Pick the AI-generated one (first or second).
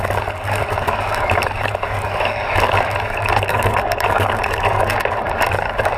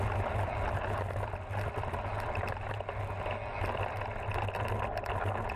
first